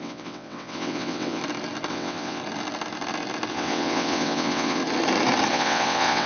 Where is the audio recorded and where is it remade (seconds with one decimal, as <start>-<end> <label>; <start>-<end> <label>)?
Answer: 0.0-1.4 remade; 1.4-1.9 recorded; 1.9-2.4 remade; 2.4-3.5 recorded; 3.5-4.8 remade; 4.8-5.5 recorded; 5.5-6.3 remade